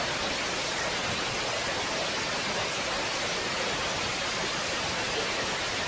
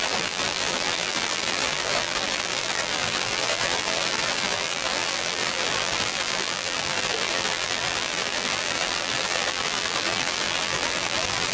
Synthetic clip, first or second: second